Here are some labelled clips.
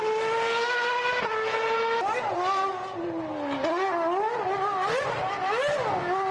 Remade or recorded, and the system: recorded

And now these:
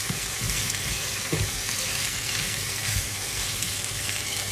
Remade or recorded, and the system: remade, codec, SNAC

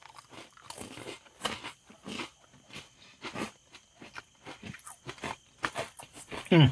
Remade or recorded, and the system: recorded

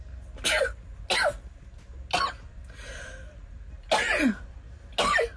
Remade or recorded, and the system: recorded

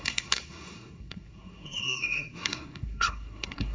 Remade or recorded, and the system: remade, codec, SNAC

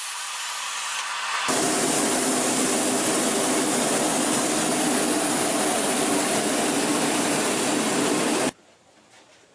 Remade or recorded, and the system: recorded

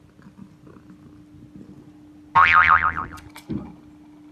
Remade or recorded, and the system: recorded